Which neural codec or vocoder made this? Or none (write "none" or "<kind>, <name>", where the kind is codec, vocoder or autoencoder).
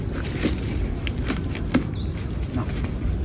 none